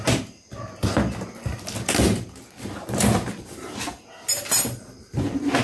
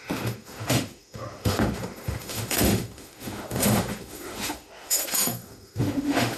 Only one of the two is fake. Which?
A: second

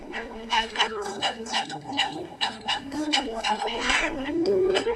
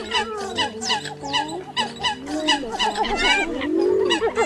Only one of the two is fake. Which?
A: first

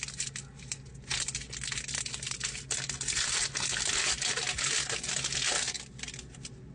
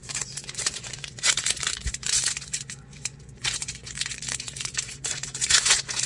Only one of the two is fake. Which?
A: second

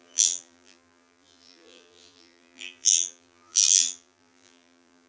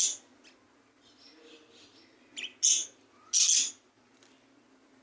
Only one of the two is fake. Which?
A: first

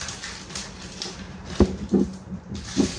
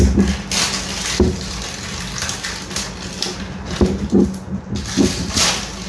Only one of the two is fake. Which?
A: first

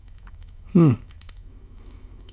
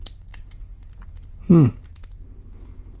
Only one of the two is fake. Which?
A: first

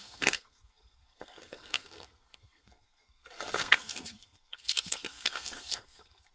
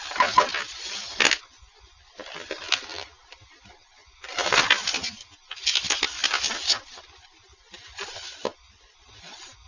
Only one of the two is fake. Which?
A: first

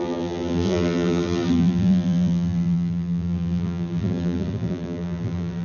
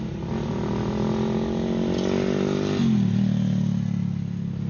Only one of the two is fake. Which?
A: first